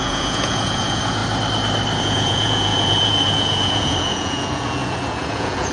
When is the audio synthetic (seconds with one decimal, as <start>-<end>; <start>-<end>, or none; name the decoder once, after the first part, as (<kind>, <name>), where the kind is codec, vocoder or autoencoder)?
0.0-1.2 (vocoder, Vocos); 2.0-5.7